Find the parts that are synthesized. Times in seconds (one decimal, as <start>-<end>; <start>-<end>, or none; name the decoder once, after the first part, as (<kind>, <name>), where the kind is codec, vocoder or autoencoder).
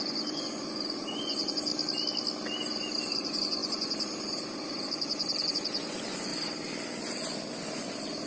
0.0-1.7 (vocoder, Vocos); 3.1-6.3; 7.5-8.3